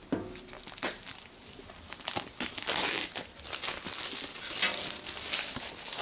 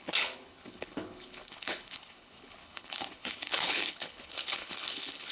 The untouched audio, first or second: first